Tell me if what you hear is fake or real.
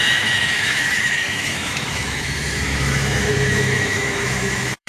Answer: fake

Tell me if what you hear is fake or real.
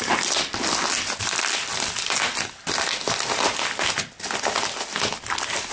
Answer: real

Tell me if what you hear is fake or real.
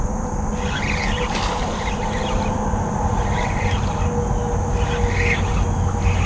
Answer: real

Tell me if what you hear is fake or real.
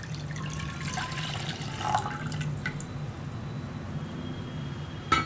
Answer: real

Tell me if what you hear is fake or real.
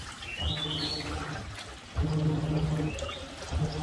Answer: real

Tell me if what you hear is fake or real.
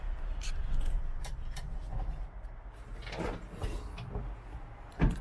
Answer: real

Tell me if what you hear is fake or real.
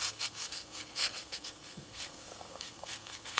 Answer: fake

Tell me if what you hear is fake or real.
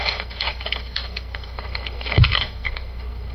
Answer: fake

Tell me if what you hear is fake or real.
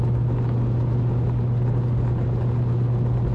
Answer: real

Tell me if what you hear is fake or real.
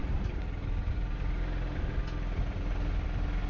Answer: real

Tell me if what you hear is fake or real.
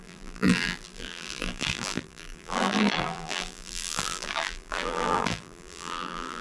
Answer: fake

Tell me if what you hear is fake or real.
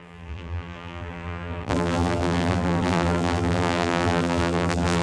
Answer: fake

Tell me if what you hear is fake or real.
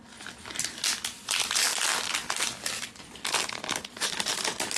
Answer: real